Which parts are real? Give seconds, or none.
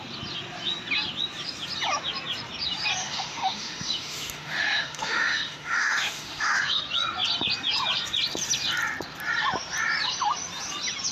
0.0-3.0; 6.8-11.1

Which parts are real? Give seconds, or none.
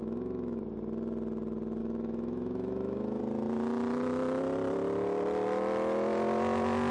0.6-1.8; 3.2-6.9